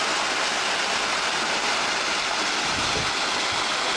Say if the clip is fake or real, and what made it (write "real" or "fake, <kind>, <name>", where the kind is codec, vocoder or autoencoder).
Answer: real